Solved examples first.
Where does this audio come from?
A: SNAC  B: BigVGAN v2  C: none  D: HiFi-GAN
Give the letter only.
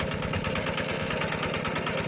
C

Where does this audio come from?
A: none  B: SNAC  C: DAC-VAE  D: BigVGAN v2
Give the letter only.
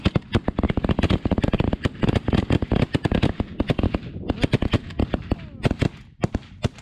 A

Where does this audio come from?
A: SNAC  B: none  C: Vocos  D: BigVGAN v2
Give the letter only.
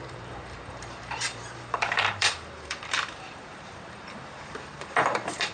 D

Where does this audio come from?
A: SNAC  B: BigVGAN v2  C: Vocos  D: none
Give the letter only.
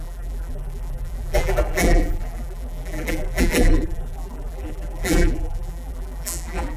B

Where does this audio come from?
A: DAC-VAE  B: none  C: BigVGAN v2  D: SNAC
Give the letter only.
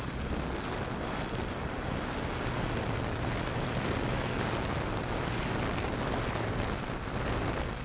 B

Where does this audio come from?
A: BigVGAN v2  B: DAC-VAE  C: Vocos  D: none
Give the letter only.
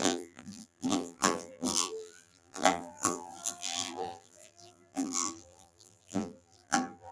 A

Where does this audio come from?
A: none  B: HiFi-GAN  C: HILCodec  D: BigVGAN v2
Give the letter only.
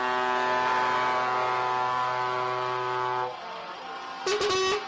A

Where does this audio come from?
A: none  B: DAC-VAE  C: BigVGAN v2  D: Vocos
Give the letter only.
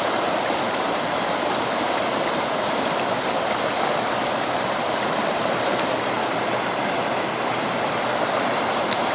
C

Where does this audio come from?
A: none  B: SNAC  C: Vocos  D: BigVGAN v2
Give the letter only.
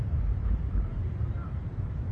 D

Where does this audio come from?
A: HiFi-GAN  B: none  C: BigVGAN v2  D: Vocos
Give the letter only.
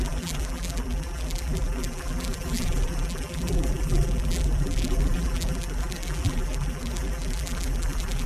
C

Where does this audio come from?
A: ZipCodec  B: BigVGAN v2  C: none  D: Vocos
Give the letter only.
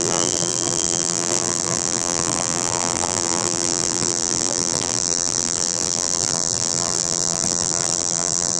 B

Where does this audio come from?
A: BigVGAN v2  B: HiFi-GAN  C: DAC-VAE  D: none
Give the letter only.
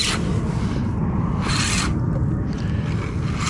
D